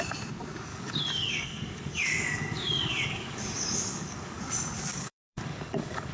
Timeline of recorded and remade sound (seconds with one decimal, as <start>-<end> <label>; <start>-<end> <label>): 0.0-0.7 recorded; 0.7-4.4 remade; 4.4-4.9 recorded; 4.9-6.1 remade